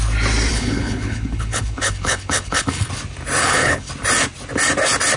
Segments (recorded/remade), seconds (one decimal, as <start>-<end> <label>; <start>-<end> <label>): 0.0-0.5 recorded; 0.5-2.9 remade; 2.9-3.4 recorded; 3.4-3.9 remade; 3.9-5.2 recorded